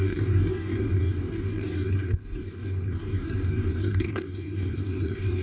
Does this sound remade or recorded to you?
remade